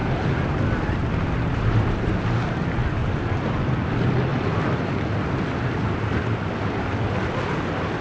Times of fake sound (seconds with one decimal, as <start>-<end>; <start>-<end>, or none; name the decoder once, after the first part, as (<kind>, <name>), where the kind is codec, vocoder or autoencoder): 3.0-3.9 (vocoder, BigVGAN v2); 4.3-6.3